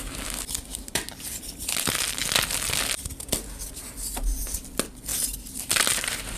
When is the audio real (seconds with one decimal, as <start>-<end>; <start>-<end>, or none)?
0.0-0.7; 2.2-6.4